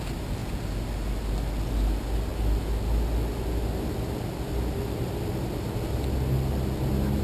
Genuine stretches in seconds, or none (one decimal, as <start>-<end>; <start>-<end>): 0.0-7.2